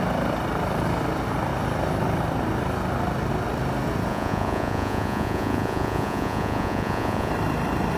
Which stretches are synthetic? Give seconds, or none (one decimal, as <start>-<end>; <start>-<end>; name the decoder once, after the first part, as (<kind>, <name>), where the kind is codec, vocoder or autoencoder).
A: 4.1-7.3 (vocoder, Vocos)